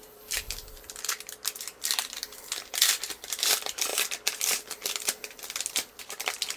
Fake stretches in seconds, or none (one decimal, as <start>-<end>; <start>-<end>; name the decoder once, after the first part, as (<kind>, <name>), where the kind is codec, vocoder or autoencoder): 0.0-6.6 (vocoder, BigVGAN v2)